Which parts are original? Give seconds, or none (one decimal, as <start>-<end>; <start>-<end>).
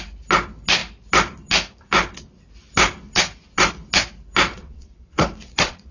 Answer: 0.0-4.5